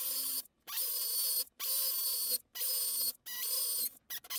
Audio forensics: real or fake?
real